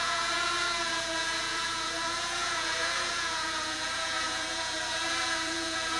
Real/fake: fake